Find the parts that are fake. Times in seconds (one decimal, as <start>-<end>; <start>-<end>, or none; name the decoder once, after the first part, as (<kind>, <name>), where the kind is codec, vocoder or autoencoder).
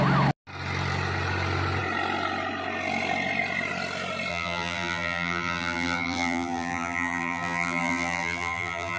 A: 4.3-9.0 (vocoder, BigVGAN v2)